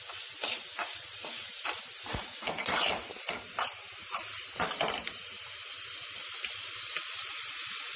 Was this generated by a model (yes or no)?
yes